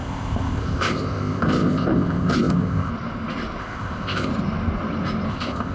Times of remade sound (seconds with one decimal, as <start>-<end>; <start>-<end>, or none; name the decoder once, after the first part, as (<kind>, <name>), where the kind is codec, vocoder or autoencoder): 0.0-2.9 (codec, ZipCodec); 3.6-4.3; 5.3-5.7